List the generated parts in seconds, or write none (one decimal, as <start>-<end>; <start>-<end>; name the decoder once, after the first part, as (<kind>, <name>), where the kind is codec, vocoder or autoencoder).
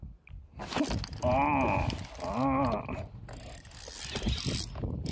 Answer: none